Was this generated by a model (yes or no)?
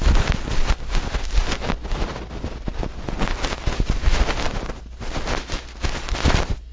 no